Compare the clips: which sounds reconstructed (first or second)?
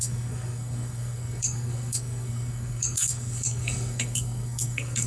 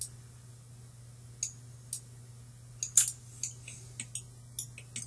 first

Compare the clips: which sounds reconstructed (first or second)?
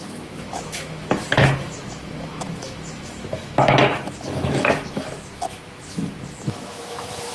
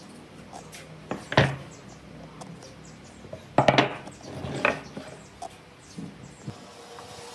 first